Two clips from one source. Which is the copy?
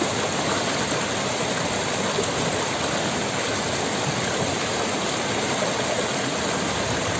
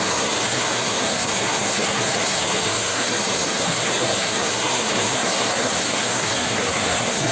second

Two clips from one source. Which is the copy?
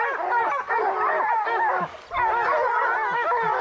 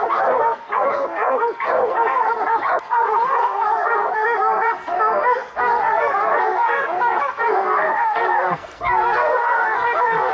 second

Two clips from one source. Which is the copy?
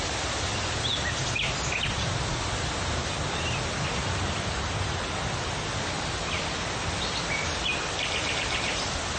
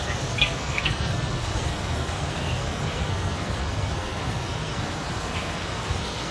second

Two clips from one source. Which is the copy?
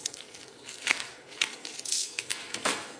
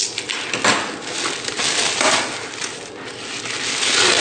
first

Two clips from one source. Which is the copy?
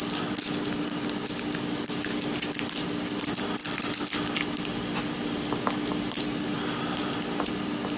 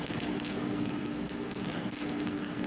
second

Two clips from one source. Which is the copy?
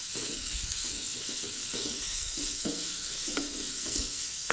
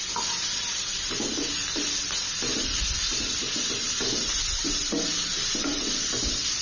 first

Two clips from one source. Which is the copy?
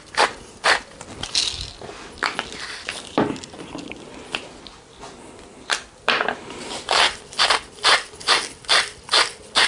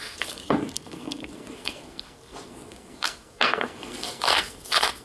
second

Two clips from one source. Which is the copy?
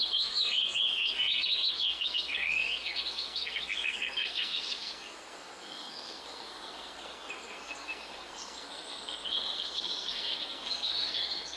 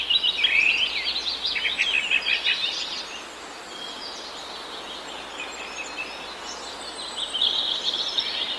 first